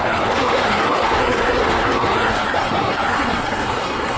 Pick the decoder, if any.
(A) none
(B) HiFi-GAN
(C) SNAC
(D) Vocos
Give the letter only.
C